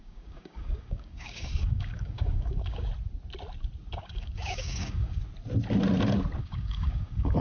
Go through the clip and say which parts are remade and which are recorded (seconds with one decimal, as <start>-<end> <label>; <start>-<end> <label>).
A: 0.0-2.9 remade; 2.9-3.9 recorded; 3.9-5.2 remade; 5.2-6.4 recorded; 6.4-7.4 remade